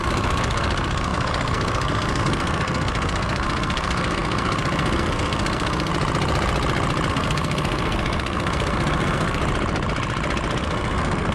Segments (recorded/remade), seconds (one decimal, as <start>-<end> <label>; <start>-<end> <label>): 0.0-5.9 remade; 5.9-7.1 recorded; 7.1-9.4 remade; 9.4-10.6 recorded; 10.6-11.3 remade